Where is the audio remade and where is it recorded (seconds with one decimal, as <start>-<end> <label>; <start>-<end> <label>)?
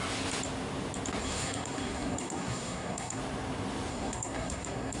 0.0-1.2 recorded; 1.2-3.2 remade; 3.2-3.9 recorded; 3.9-5.0 remade